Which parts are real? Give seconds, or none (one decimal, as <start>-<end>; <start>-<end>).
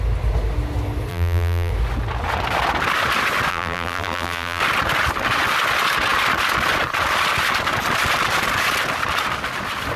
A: 0.0-1.1; 1.7-3.5; 4.6-10.0